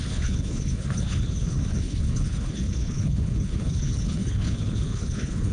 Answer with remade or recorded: remade